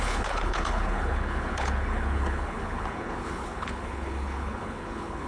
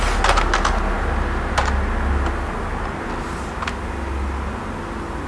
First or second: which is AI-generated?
first